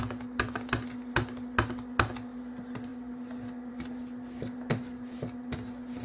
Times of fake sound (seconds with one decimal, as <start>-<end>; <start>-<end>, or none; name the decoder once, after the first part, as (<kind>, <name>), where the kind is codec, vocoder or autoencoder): none